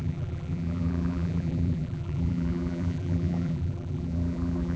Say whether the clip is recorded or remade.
remade